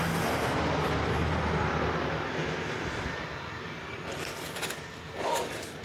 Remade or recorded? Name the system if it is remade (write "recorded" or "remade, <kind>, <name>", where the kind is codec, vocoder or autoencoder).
recorded